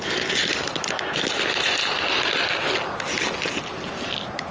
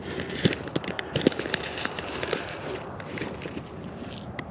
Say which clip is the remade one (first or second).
second